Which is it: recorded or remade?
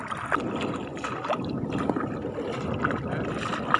recorded